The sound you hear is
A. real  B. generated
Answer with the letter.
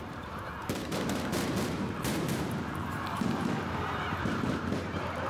B